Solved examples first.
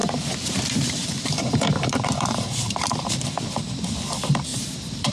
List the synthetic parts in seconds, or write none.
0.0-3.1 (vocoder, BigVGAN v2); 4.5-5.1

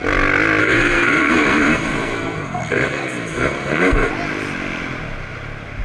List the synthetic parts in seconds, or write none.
0.6-4.1 (codec, SNAC)

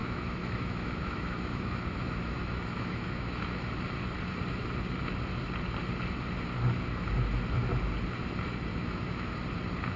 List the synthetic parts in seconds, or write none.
0.0-3.7 (autoencoder, DAC-VAE); 8.7-9.3

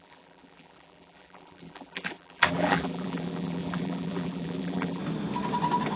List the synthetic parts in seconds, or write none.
0.0-5.0 (vocoder, BigVGAN v2)

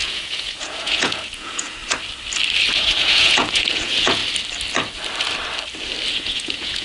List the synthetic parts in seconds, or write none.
0.0-1.8 (vocoder, Vocos); 2.8-4.2; 6.1-6.8

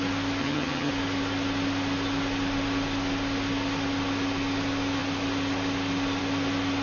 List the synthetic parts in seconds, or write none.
0.4-0.9 (vocoder, HiFi-GAN)